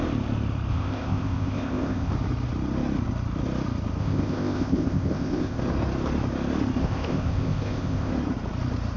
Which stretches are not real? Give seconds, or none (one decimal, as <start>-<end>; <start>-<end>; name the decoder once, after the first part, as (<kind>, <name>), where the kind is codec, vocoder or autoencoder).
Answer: 0.7-2.1 (codec, ZipCodec); 4.0-5.6; 6.8-8.1